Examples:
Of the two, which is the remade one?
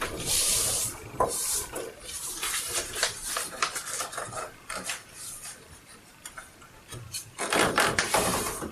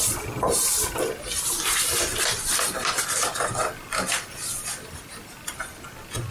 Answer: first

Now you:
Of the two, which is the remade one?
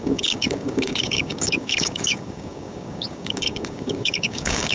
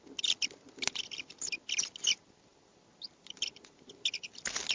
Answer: first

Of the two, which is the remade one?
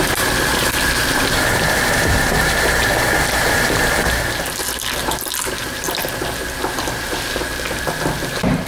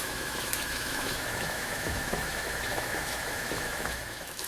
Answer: second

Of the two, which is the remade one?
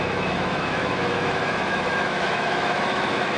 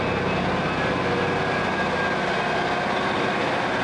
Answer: first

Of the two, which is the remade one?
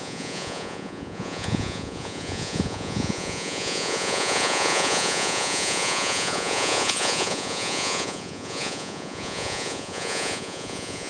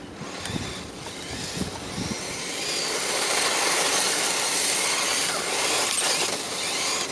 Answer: first